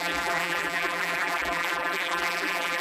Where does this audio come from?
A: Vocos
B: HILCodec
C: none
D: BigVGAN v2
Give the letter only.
D